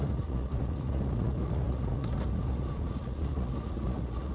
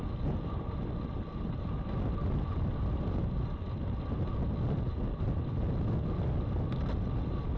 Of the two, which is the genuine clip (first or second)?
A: second